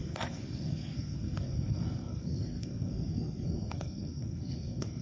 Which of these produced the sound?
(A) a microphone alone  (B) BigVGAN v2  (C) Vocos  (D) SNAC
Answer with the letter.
D